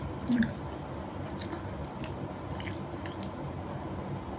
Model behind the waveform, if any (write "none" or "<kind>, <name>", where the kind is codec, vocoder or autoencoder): none